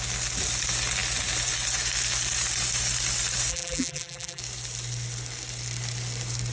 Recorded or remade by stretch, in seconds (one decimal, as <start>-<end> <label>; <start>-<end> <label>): 0.0-3.5 recorded; 3.5-4.4 remade; 4.4-6.5 recorded